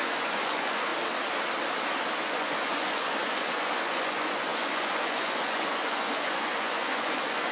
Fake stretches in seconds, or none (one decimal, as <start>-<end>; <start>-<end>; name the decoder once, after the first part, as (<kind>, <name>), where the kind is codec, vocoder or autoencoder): 0.0-0.9 (vocoder, Vocos); 2.2-7.5